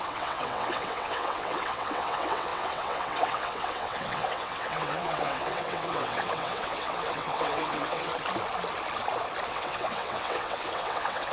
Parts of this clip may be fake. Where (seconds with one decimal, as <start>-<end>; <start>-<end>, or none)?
0.0-8.1; 9.5-11.3